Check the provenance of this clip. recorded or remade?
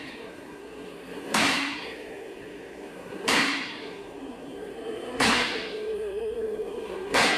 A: remade